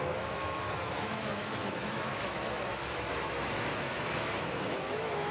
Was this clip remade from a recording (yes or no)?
yes